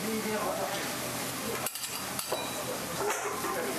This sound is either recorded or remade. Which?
recorded